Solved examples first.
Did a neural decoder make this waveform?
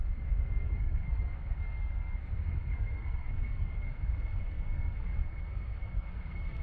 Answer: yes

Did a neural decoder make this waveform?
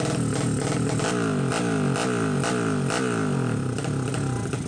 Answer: no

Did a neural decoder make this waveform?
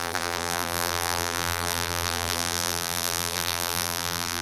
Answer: yes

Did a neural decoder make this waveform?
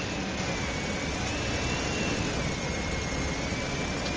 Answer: no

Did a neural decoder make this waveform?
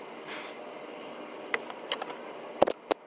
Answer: no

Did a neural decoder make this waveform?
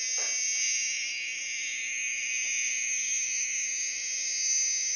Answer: no